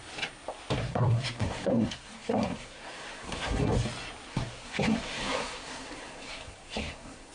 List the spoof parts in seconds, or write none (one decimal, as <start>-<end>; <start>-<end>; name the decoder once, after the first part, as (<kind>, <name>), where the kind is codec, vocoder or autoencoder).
0.8-3.7 (codec, SNAC); 4.3-7.3